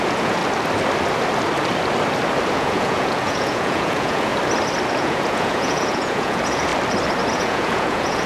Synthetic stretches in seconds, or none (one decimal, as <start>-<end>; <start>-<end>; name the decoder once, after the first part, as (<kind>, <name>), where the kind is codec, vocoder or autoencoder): 0.0-0.4 (vocoder, Vocos); 2.5-4.3; 4.9-6.7; 7.3-8.3

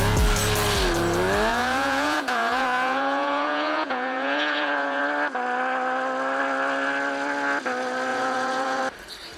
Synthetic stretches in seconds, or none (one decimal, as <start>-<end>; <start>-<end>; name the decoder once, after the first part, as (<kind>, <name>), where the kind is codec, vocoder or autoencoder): 1.5-5.0 (vocoder, Vocos); 8.1-8.8

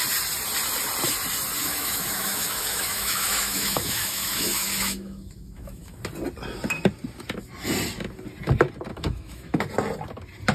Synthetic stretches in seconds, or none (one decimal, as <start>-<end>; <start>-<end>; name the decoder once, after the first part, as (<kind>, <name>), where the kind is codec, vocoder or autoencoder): 1.6-6.0 (autoencoder, DAC-VAE); 8.9-9.6

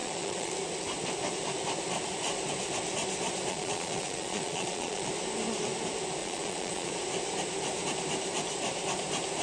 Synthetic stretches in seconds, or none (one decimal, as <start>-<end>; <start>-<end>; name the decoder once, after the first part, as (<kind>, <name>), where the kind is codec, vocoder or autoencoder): 0.0-0.5 (vocoder, Vocos); 3.5-5.1; 6.2-6.9